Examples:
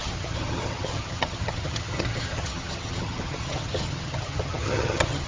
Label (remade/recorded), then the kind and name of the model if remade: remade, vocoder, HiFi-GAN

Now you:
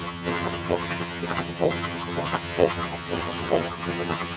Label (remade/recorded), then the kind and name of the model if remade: remade, vocoder, HiFi-GAN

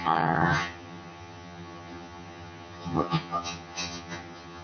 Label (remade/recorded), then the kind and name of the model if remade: remade, vocoder, HiFi-GAN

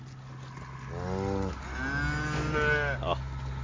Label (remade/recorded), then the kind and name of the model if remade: recorded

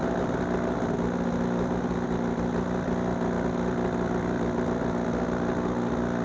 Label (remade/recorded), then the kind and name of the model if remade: recorded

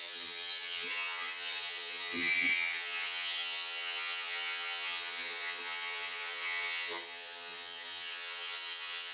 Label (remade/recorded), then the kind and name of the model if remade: remade, vocoder, HiFi-GAN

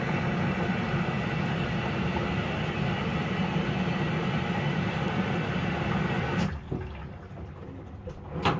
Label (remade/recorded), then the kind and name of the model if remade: recorded